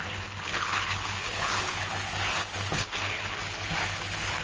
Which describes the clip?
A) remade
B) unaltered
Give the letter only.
A